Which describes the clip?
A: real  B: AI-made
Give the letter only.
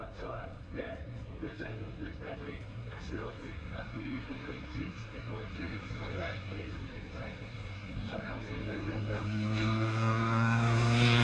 B